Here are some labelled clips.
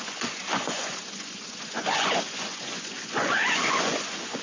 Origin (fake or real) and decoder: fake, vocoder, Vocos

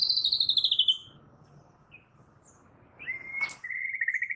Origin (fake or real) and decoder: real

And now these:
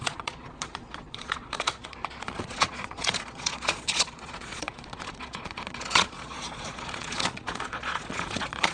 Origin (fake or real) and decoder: fake, vocoder, Vocos